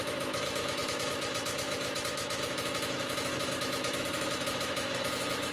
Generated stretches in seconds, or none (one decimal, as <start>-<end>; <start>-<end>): 0.0-5.5